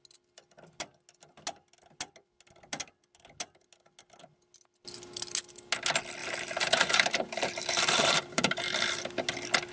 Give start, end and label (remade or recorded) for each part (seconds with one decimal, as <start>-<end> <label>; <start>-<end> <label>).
0.0-6.2 recorded; 6.2-9.0 remade; 9.0-9.7 recorded